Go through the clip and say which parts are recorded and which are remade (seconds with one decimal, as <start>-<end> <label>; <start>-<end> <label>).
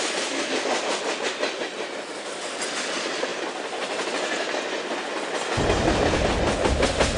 0.0-7.2 recorded